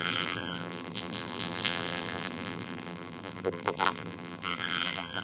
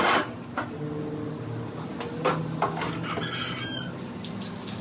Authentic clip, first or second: second